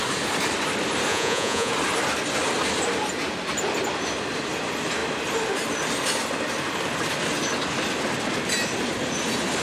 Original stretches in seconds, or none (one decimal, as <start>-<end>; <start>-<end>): 0.0-1.1; 1.7-9.6